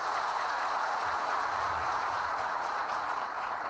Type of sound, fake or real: fake